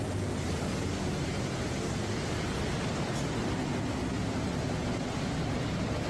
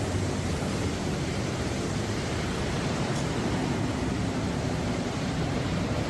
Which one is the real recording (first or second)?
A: first